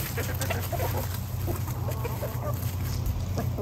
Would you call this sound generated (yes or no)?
no